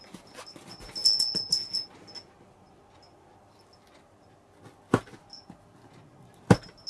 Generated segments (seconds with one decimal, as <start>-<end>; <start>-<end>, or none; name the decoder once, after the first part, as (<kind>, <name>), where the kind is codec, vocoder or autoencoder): none

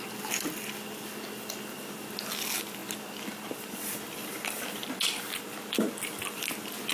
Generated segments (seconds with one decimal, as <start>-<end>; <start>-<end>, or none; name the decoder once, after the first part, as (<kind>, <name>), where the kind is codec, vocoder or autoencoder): none

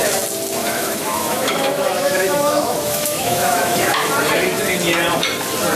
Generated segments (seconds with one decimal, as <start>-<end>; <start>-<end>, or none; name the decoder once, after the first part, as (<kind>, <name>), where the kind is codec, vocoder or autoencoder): 0.6-4.1 (autoencoder, DAC-VAE)

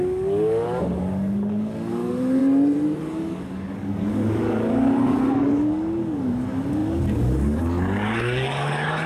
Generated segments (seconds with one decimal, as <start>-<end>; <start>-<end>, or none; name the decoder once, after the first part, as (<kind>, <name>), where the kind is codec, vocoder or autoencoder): 0.0-2.4 (codec, DAC); 3.0-9.1

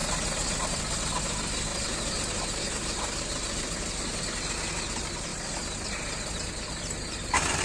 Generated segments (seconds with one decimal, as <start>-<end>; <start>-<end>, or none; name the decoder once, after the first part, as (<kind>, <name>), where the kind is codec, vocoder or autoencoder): 0.0-0.8 (vocoder, BigVGAN v2); 1.7-4.2; 5.3-7.6

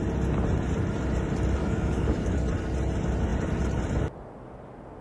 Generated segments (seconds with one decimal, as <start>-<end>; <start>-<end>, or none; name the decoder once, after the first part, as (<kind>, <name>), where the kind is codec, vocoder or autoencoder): 1.6-2.5 (codec, DAC)